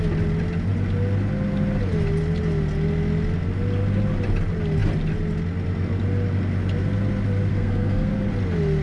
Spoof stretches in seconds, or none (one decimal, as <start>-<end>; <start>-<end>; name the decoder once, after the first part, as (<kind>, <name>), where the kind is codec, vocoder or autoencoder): 7.5-8.1 (codec, SNAC)